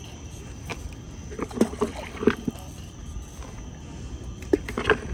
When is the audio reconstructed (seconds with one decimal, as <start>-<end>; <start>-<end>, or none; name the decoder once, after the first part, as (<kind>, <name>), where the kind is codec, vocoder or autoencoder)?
none